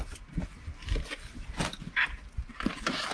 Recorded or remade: recorded